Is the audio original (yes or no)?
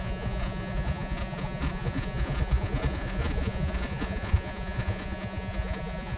no